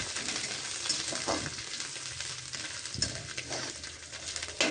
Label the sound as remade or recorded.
recorded